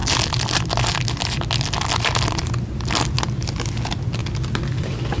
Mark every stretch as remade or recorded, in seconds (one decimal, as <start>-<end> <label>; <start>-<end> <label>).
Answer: 0.0-4.2 recorded; 4.2-5.2 remade